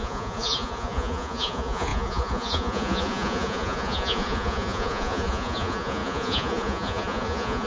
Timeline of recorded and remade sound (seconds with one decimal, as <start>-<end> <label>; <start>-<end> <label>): 0.0-7.7 remade